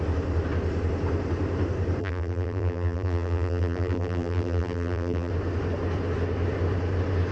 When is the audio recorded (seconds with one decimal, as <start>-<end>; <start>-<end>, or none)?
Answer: 0.0-2.0; 5.3-7.3